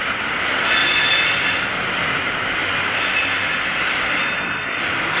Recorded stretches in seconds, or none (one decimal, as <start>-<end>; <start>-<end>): 0.0-4.2; 4.8-5.2